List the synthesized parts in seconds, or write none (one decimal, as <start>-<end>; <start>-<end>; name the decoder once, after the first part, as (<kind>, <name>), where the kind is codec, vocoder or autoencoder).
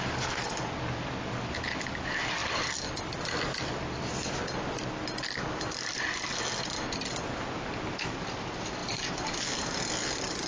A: none